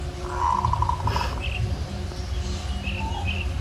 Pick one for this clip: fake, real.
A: real